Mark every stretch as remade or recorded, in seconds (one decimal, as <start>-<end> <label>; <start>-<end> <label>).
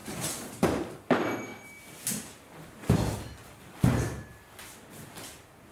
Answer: 0.0-1.1 remade; 1.1-5.7 recorded